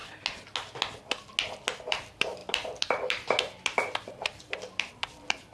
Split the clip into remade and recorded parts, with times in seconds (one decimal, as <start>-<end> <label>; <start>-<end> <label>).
0.0-1.9 recorded; 1.9-5.5 remade